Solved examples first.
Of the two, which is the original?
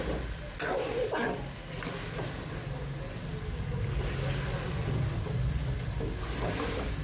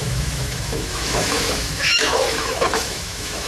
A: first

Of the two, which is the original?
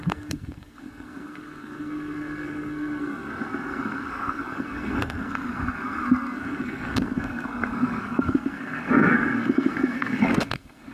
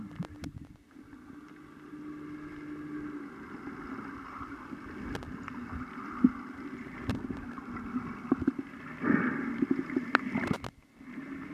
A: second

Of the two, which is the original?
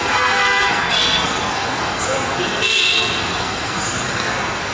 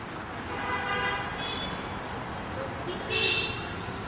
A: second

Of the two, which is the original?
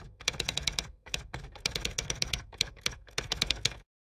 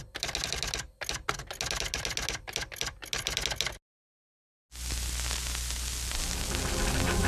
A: second